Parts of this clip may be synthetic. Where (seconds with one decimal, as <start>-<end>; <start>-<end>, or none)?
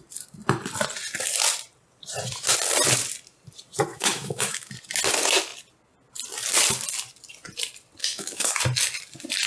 3.9-4.7; 8.0-8.6